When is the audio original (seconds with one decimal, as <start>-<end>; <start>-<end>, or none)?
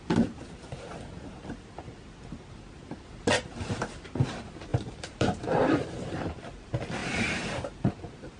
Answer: 0.0-4.7; 6.3-7.0; 7.9-8.4